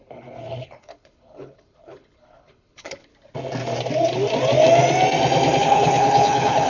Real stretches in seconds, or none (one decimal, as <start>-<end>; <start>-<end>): 3.1-5.6

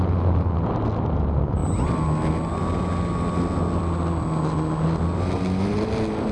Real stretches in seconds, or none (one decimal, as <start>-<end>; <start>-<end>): 0.0-6.3

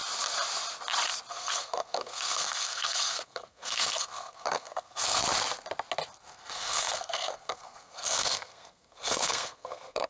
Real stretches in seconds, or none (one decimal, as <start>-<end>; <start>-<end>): 0.0-1.3; 5.2-6.2

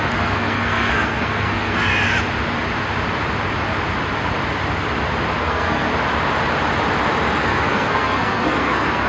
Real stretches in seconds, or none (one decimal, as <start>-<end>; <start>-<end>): 1.9-5.4; 5.9-7.4

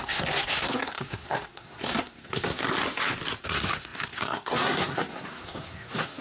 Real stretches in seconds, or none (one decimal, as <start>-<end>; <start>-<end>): 2.6-3.4

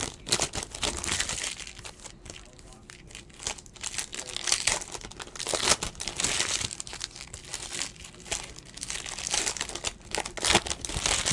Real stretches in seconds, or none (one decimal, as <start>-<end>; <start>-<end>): 0.0-11.3